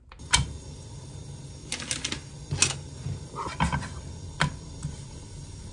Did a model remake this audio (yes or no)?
no